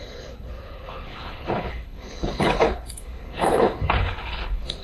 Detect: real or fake fake